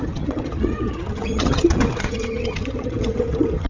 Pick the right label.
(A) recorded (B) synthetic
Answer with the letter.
B